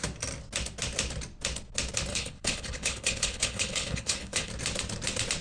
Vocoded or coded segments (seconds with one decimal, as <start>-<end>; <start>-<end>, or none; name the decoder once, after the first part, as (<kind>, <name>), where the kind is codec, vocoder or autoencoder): 2.1-4.5 (codec, HILCodec)